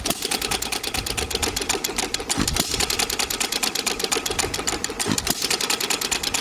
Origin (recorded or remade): recorded